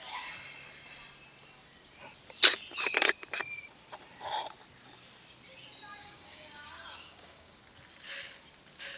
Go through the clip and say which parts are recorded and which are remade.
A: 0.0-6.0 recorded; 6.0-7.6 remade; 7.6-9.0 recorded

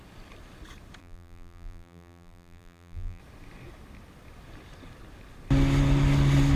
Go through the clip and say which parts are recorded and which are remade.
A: 0.0-1.0 recorded; 1.0-3.2 remade; 3.2-6.6 recorded

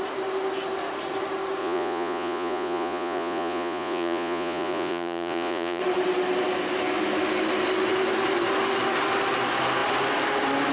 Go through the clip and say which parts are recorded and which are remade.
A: 0.0-1.6 recorded; 1.6-5.8 remade; 5.8-10.7 recorded

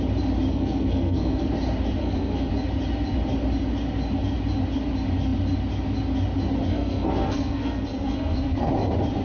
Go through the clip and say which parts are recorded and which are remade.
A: 0.0-0.5 recorded; 0.5-1.5 remade; 1.5-2.0 recorded; 2.0-2.5 remade; 2.5-6.7 recorded; 6.7-8.7 remade; 8.7-9.2 recorded